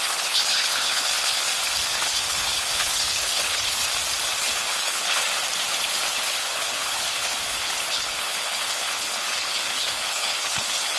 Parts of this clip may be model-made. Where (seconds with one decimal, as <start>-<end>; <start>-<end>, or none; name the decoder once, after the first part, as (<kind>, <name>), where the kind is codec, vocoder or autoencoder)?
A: 0.0-1.5 (codec, HILCodec); 2.0-3.9; 4.4-5.2; 6.1-11.0